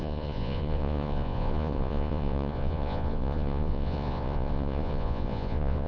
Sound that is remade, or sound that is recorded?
remade